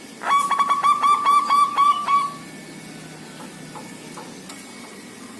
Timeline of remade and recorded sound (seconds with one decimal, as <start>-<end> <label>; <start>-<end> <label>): 0.0-5.4 recorded